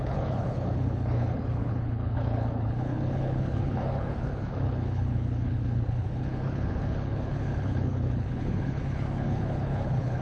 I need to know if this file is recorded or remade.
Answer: remade